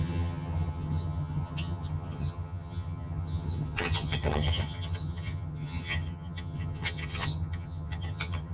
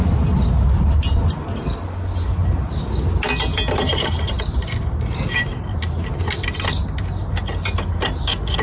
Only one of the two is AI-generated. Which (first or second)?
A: first